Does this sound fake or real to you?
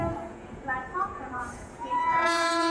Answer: fake